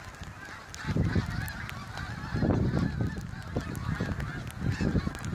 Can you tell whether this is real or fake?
real